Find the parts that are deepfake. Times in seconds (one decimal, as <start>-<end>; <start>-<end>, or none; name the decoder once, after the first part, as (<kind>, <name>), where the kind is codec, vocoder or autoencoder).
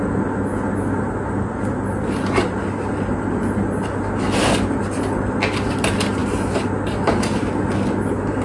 none